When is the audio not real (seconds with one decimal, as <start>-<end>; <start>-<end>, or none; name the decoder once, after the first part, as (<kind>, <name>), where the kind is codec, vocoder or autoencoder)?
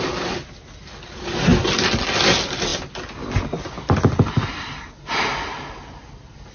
none